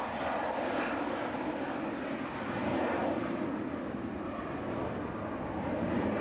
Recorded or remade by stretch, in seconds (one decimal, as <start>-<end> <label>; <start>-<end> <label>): 0.0-6.2 recorded